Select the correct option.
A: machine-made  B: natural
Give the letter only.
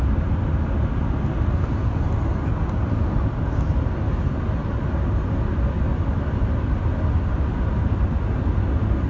B